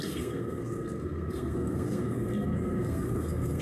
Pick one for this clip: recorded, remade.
remade